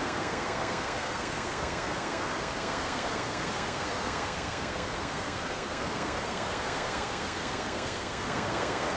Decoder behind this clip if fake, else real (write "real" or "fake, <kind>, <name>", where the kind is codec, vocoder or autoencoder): fake, codec, SNAC